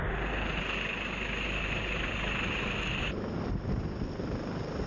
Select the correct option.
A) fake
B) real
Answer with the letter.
B